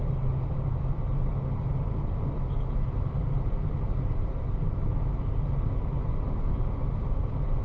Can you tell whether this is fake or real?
real